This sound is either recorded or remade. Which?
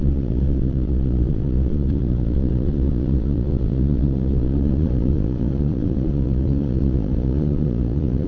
remade